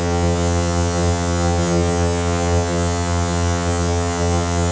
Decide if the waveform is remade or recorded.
remade